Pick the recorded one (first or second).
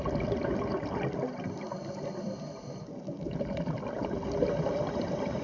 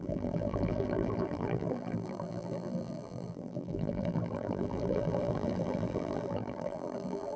first